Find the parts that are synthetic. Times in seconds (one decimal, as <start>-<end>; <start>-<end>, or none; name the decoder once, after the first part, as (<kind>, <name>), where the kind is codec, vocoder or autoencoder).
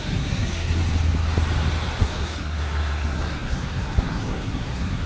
0.0-0.8 (codec, SNAC); 2.0-5.1